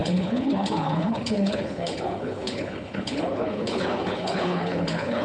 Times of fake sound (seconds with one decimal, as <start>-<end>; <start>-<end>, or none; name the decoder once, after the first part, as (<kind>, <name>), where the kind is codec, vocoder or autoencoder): 0.0-5.2 (codec, HILCodec)